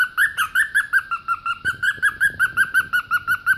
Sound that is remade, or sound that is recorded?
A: recorded